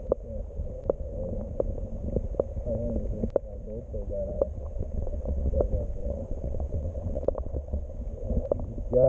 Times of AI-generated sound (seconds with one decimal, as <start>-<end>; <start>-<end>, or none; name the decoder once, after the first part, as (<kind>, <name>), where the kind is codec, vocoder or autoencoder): 4.3-5.6 (vocoder, WaveNeXt); 6.0-7.9